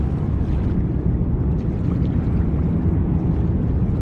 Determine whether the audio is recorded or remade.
recorded